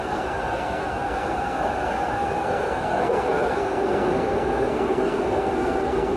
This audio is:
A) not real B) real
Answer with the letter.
A